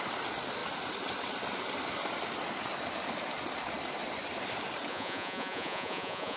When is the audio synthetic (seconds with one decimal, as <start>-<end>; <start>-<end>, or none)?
4.9-6.4